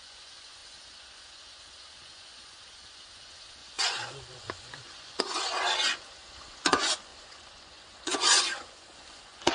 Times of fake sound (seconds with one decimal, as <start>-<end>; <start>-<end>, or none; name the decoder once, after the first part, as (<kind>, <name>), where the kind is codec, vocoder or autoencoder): 0.0-9.5 (vocoder, Vocos)